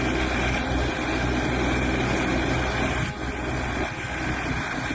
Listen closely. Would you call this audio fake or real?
real